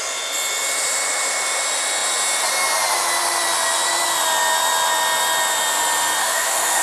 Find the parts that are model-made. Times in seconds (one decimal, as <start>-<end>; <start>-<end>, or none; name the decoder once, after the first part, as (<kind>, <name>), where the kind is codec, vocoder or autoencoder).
6.2-6.8 (autoencoder, DAC-VAE)